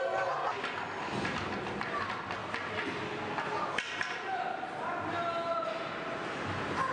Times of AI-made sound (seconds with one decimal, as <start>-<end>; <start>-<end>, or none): none